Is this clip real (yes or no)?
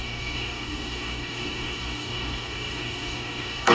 no